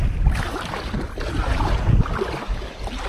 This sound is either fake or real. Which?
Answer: real